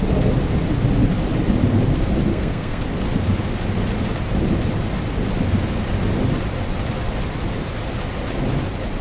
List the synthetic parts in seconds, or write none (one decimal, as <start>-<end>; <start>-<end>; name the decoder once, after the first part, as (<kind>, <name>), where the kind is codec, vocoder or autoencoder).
2.3-2.8 (codec, SNAC)